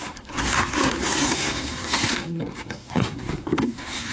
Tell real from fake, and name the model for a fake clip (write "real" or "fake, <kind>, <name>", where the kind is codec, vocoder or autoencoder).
fake, codec, SNAC